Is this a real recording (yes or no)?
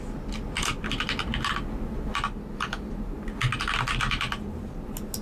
yes